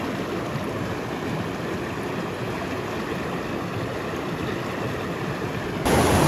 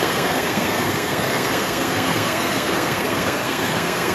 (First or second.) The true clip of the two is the first